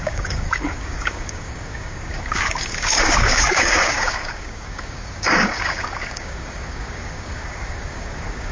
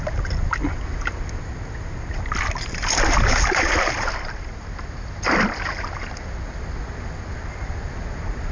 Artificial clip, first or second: first